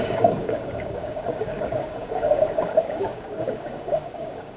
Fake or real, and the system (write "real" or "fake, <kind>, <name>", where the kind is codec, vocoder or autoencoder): fake, codec, DAC